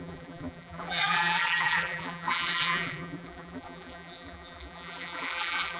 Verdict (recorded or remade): remade